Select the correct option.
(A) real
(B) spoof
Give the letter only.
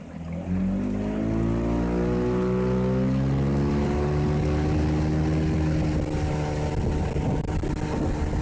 A